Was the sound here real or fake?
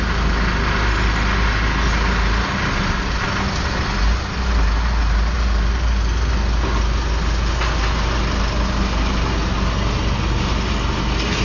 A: real